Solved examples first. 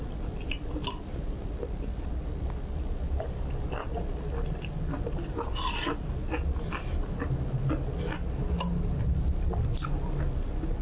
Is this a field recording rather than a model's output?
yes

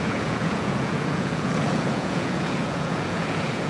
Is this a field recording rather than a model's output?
no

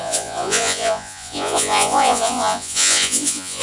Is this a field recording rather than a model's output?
no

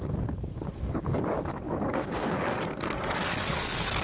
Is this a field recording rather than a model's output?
no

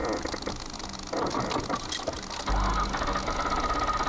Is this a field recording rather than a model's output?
yes